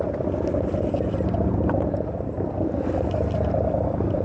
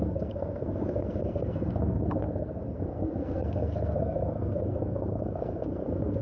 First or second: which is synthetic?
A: second